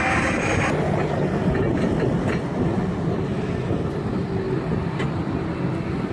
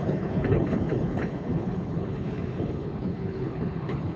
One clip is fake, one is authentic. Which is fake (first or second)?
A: second